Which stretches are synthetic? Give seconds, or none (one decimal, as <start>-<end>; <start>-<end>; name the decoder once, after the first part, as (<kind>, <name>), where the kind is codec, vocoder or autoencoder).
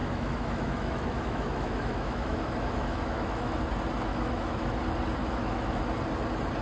0.0-3.6 (autoencoder, DAC-VAE); 4.1-4.7; 5.2-5.8